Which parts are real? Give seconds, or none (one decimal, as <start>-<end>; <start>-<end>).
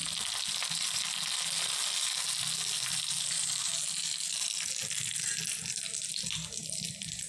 0.0-7.3